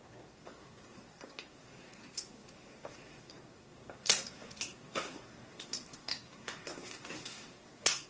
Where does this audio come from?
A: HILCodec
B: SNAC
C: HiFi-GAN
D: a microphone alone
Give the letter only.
B